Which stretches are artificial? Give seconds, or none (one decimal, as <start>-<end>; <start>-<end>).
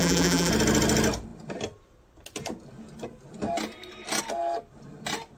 0.0-0.5